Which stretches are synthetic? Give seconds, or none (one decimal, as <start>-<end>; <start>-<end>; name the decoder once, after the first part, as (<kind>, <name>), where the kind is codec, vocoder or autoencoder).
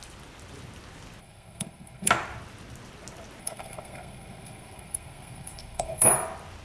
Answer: 1.2-2.1 (codec, SNAC); 3.4-6.1